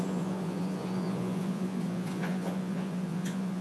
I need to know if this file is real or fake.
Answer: fake